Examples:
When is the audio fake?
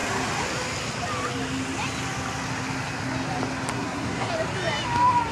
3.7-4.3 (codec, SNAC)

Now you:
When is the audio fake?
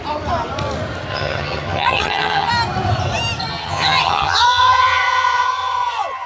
1.1-2.5 (vocoder, HiFi-GAN); 3.5-6.3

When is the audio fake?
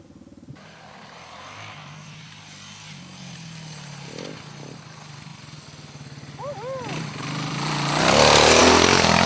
none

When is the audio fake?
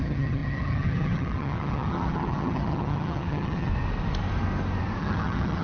0.0-3.7 (vocoder, HiFi-GAN); 5.0-5.6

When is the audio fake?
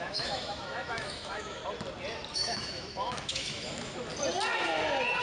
0.0-1.6 (autoencoder, DAC-VAE); 2.3-4.1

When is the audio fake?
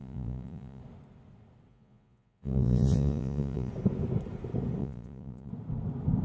0.0-0.8 (vocoder, Vocos); 1.7-3.7; 4.8-5.5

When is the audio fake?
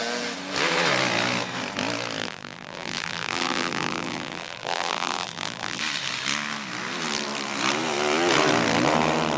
2.2-5.8 (vocoder, BigVGAN v2)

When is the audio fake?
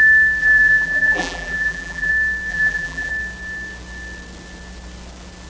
0.4-2.1 (vocoder, BigVGAN v2); 2.5-3.1